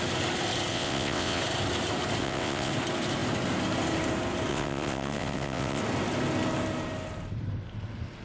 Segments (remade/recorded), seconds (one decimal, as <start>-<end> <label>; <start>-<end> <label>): 0.0-0.7 recorded; 0.7-1.4 remade; 1.4-2.2 recorded; 2.2-2.7 remade; 2.7-4.5 recorded; 4.5-5.8 remade; 5.8-8.2 recorded